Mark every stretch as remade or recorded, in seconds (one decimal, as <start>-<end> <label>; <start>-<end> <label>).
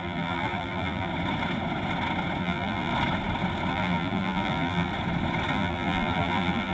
0.0-1.1 remade; 1.1-2.4 recorded; 2.4-2.9 remade; 2.9-3.7 recorded; 3.7-4.9 remade; 4.9-5.5 recorded; 5.5-6.7 remade